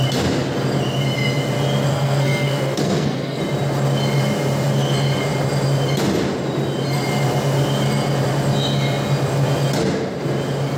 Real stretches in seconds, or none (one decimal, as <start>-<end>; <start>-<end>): 0.0-1.9; 3.4-10.8